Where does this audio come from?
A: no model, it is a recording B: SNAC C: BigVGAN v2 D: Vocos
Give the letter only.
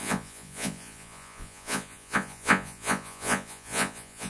D